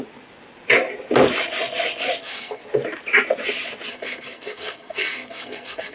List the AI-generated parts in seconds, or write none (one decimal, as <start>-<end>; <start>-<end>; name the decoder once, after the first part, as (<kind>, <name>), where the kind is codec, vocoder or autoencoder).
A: 2.2-2.6 (codec, SNAC); 3.9-5.9